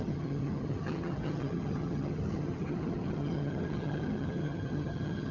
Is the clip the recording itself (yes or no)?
no